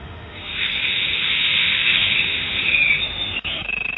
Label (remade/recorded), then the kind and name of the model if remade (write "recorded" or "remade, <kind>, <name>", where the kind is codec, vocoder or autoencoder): remade, autoencoder, DAC-VAE